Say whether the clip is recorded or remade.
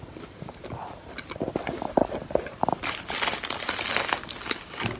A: recorded